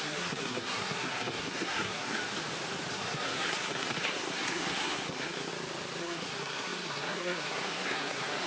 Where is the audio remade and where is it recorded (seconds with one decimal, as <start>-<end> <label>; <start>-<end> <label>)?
0.0-2.2 remade; 2.2-2.9 recorded; 2.9-5.5 remade; 5.5-6.0 recorded; 6.0-8.5 remade